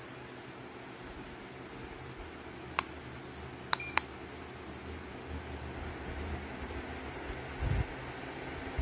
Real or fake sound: real